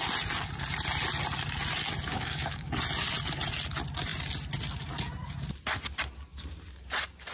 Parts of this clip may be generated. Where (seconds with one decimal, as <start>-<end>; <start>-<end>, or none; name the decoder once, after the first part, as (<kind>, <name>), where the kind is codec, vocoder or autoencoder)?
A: 2.1-2.7 (codec, DAC)